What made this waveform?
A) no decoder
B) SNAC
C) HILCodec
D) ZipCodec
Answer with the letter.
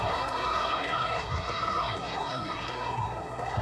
B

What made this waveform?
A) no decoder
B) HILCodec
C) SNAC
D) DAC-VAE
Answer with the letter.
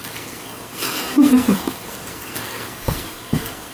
C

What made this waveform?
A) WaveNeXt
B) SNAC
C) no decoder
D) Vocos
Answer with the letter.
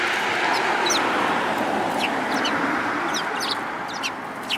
C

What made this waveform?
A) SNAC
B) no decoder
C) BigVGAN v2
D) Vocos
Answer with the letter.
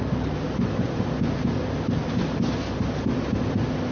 B